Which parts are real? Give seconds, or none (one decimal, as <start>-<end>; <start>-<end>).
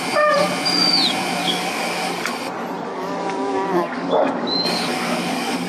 0.0-1.4; 2.3-2.9